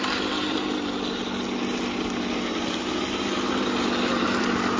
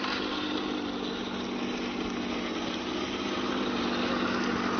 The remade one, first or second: first